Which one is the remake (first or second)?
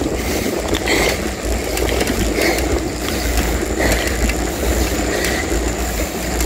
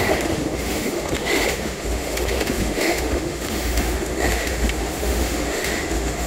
second